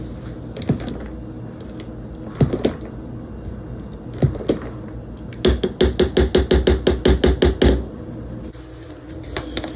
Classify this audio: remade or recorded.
recorded